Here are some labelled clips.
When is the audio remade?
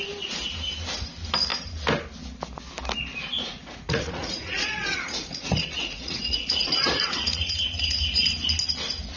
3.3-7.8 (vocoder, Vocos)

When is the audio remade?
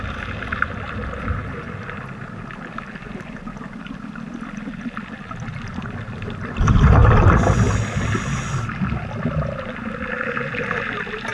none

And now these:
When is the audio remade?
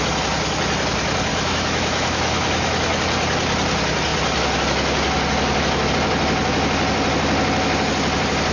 1.3-3.0 (autoencoder, DAC-VAE)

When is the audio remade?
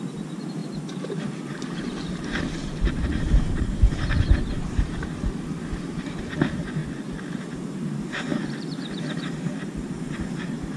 0.0-6.8 (vocoder, BigVGAN v2); 7.4-10.8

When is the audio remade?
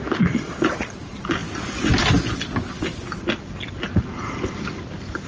none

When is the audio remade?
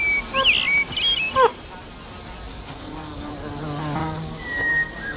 2.5-3.3 (codec, DAC); 4.0-5.2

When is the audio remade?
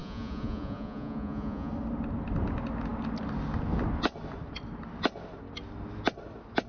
0.0-1.7 (vocoder, Vocos)